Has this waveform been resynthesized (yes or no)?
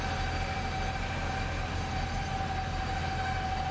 no